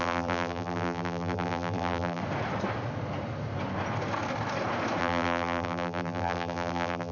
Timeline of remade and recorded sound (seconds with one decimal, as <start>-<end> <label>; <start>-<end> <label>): 0.0-2.2 remade; 2.2-5.0 recorded; 5.0-7.1 remade